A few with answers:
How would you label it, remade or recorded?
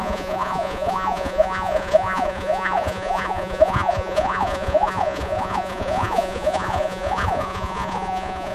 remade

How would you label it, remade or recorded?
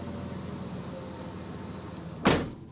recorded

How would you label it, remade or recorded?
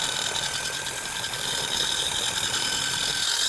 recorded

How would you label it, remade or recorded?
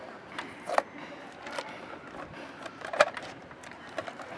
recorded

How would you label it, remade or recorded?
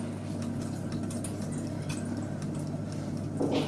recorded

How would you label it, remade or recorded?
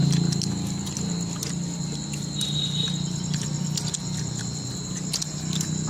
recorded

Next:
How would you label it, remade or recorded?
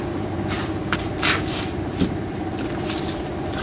remade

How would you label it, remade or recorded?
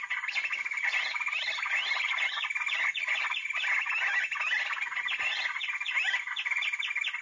recorded